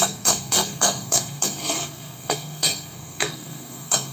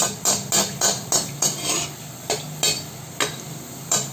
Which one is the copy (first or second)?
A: first